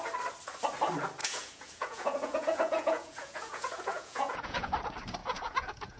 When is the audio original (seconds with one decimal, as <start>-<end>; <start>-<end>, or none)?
0.0-1.2; 4.8-5.2